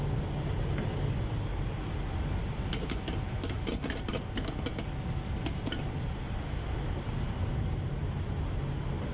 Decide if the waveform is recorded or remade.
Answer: recorded